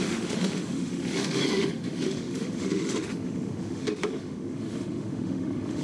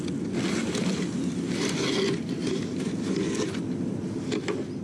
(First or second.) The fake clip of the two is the first